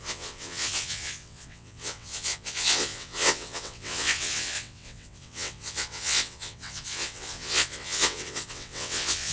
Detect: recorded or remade remade